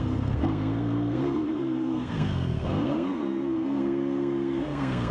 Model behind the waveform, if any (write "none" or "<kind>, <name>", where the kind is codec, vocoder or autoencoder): codec, SNAC